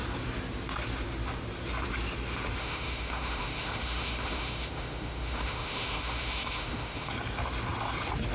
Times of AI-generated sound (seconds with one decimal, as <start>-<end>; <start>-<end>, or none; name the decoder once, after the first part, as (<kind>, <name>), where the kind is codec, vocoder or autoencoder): 2.6-7.1 (autoencoder, DAC-VAE)